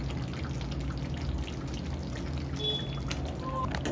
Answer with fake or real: real